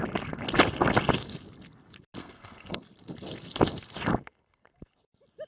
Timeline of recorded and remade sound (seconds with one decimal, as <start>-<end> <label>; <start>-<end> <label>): 0.0-2.2 recorded; 2.2-2.8 remade; 2.8-5.5 recorded